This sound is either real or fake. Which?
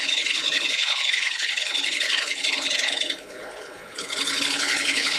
fake